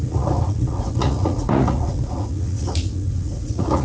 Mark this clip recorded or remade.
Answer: remade